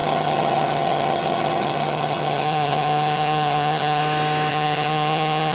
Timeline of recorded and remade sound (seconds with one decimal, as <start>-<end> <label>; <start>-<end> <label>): 0.0-4.0 remade; 4.0-4.5 recorded; 4.5-5.5 remade